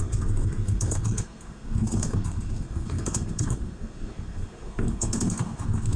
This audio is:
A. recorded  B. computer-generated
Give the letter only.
B